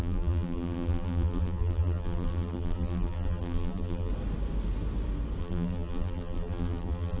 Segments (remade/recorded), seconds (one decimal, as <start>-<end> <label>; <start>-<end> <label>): 0.0-4.1 remade; 4.1-5.4 recorded; 5.4-7.2 remade